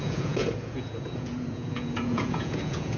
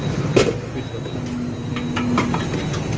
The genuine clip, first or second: second